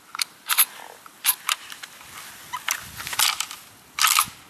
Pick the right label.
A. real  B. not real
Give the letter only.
A